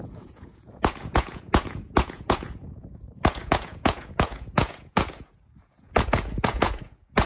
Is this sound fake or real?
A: fake